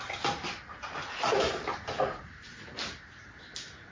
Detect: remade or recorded recorded